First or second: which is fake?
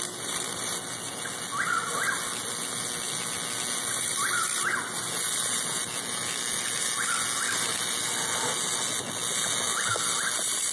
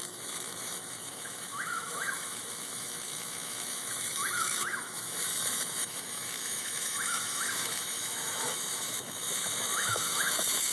second